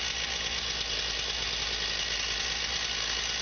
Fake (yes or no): no